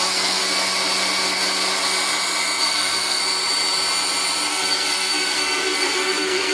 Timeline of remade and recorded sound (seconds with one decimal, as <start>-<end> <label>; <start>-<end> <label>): 0.0-0.4 remade; 0.4-2.6 recorded; 2.6-3.2 remade; 3.2-4.5 recorded; 4.5-6.5 remade